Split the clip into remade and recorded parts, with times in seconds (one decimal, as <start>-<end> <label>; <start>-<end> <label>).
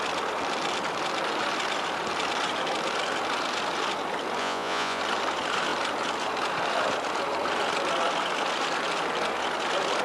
0.0-4.4 recorded; 4.4-5.0 remade; 5.0-10.0 recorded